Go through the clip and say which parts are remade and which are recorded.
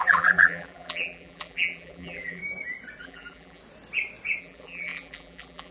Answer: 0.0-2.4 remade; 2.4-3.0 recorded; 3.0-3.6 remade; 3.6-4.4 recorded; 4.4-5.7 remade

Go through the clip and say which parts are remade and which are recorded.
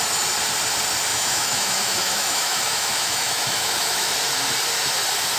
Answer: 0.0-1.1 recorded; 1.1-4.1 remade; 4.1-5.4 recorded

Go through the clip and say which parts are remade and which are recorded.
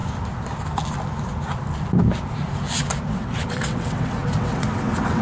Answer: 0.0-3.1 recorded; 3.1-5.2 remade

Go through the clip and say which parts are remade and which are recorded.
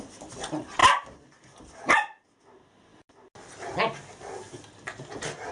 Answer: 0.0-5.5 recorded